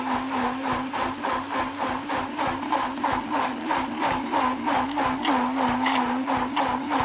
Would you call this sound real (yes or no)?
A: yes